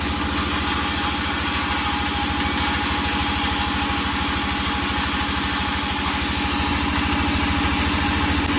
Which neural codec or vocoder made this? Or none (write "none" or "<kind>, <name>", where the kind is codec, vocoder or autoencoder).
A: none